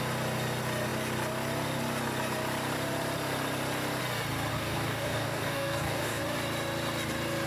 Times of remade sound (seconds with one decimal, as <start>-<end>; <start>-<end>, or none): 4.5-6.2